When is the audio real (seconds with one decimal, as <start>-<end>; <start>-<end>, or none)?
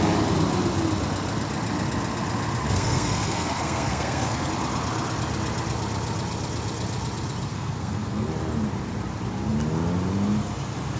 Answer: 0.0-2.6; 4.5-7.5; 8.3-11.0